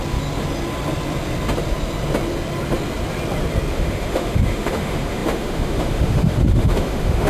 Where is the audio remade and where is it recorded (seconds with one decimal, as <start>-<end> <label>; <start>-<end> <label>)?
0.0-3.7 recorded; 3.7-7.3 remade